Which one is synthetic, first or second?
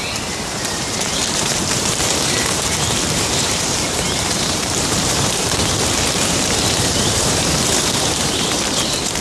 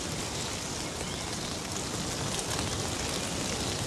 first